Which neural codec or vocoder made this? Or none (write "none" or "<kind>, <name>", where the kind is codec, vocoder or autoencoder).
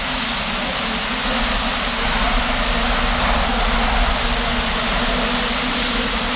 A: none